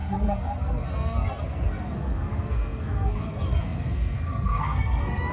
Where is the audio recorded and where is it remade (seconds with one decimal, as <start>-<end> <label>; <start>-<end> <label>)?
0.0-5.3 remade